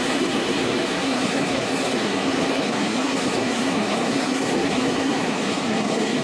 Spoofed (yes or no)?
yes